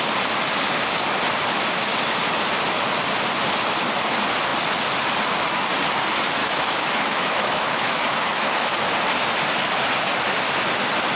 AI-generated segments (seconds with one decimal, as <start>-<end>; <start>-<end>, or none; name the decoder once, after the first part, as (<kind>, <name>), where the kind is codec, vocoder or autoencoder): 6.4-8.7 (autoencoder, DAC-VAE)